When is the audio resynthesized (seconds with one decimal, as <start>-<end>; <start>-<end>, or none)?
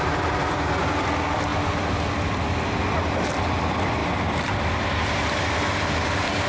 0.0-1.5; 2.8-4.0